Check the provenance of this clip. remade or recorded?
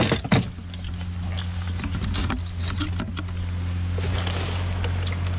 recorded